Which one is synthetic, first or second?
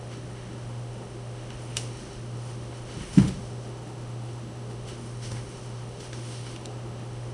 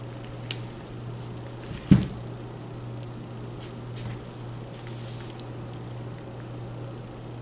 first